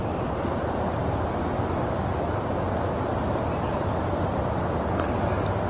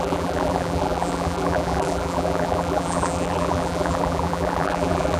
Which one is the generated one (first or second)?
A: second